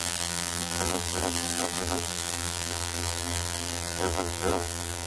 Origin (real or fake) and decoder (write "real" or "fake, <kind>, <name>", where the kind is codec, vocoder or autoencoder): fake, vocoder, BigVGAN v2